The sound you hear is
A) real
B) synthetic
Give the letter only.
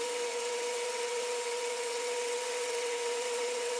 B